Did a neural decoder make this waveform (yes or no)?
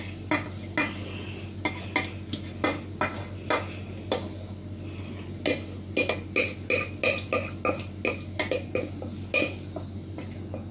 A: no